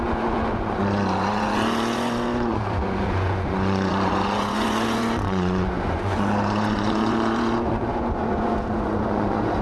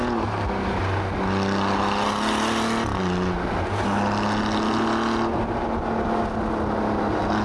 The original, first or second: second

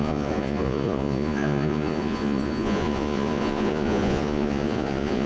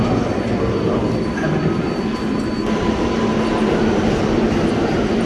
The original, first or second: second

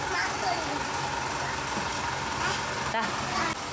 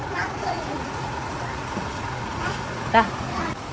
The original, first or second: first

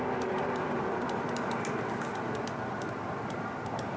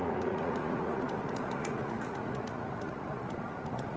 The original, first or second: first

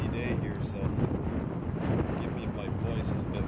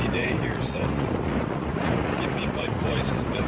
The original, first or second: first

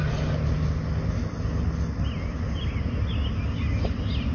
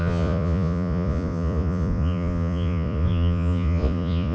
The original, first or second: first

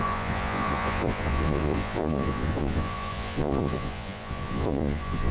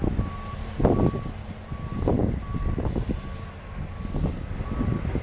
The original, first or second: second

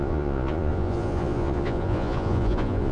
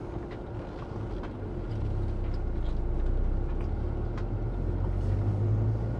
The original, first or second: second